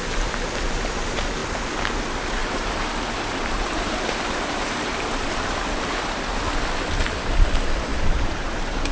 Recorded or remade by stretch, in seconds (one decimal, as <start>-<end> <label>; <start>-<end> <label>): 0.0-2.4 recorded; 2.4-5.9 remade; 5.9-7.9 recorded; 7.9-8.9 remade